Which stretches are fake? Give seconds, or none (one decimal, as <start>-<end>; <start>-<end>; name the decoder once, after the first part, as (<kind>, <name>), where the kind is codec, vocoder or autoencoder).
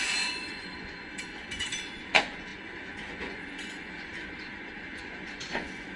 0.0-6.0 (vocoder, Vocos)